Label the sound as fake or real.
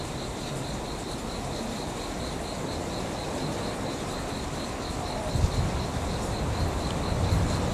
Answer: real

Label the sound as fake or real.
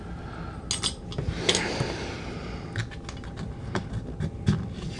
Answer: real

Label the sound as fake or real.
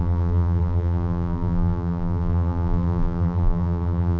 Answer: fake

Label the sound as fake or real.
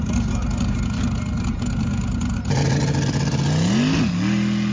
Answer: real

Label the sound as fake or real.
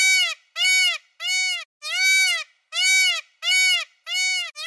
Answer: real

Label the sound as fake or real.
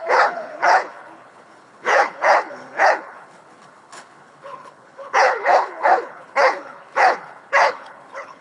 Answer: fake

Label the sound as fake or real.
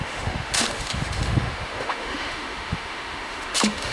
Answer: fake